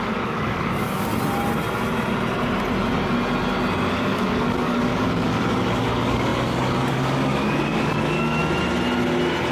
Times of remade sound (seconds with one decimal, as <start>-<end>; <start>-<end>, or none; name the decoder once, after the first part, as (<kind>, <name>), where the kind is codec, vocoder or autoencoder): 0.0-1.1 (codec, DAC); 3.9-8.4